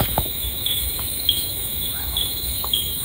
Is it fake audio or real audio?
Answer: fake